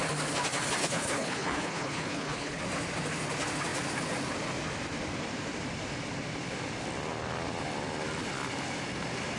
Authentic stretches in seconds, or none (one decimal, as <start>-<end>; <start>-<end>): 0.0-0.8; 2.6-9.4